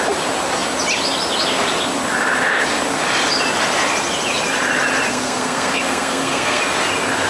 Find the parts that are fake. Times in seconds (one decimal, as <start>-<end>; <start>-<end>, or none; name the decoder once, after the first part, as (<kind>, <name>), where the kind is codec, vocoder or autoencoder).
5.1-6.6 (codec, SNAC)